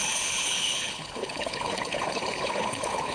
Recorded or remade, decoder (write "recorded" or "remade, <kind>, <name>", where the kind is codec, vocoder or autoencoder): remade, codec, HILCodec